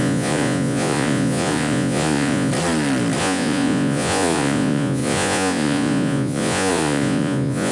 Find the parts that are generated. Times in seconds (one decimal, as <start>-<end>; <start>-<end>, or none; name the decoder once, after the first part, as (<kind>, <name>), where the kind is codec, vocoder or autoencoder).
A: 0.0-2.5 (vocoder, Vocos); 3.2-7.7